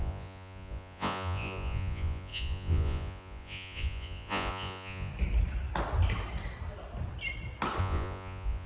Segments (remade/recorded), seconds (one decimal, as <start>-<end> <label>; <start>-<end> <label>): 0.0-5.1 remade; 5.1-7.8 recorded; 7.8-8.7 remade